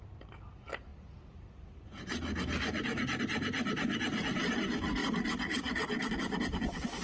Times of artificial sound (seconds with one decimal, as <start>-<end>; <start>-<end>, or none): 5.0-6.1